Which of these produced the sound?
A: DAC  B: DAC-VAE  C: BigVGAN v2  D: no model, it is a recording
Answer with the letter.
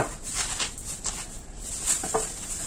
D